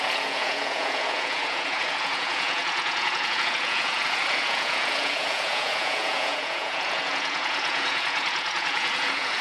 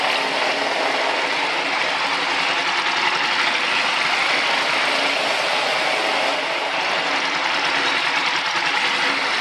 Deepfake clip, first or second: first